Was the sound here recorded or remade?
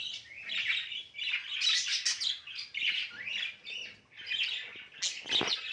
recorded